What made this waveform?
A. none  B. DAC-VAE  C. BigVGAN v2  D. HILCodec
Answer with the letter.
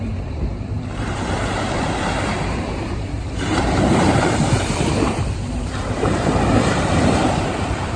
C